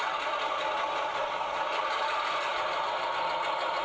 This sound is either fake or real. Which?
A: real